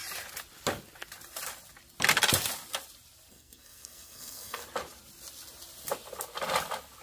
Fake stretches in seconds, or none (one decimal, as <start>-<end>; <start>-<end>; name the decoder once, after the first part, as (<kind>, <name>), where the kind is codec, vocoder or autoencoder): 3.3-4.6 (codec, SNAC)